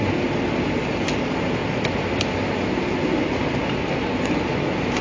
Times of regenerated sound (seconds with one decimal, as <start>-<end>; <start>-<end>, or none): none